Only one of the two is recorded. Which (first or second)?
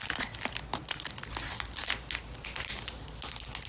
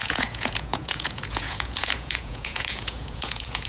first